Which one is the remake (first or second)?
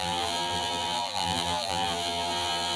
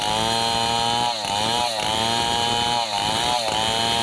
first